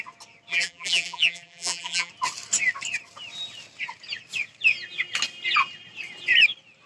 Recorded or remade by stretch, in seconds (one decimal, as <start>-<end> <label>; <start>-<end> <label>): 0.0-0.5 recorded; 0.5-2.1 remade; 2.1-6.9 recorded

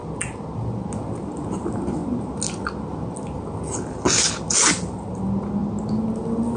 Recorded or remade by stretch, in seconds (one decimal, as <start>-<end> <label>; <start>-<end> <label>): 0.0-6.6 recorded

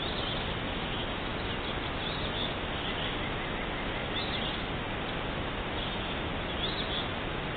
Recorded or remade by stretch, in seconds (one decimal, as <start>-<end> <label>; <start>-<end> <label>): 0.0-7.6 recorded

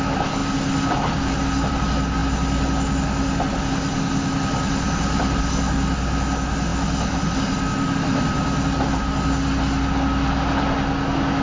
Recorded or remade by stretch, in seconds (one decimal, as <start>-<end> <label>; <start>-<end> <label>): 0.0-11.4 recorded

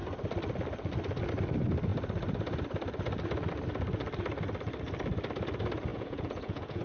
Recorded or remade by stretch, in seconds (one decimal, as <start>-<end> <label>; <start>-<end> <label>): 0.0-5.9 recorded; 5.9-6.8 remade